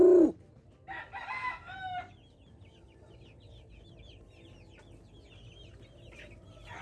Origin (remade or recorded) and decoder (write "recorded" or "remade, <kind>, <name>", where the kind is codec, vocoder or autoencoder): recorded